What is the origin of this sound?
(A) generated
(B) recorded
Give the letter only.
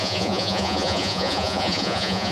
A